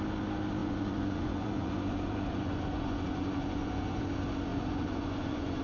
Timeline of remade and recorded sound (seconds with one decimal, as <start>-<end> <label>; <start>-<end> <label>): 0.0-0.6 recorded; 0.6-4.0 remade; 4.0-4.5 recorded; 4.5-5.6 remade